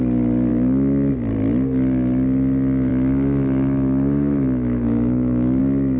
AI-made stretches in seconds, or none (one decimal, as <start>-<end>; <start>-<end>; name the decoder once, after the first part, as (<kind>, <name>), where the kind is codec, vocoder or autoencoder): 0.5-1.1 (autoencoder, DAC-VAE); 2.9-5.6